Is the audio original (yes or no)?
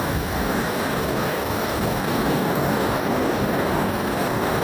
no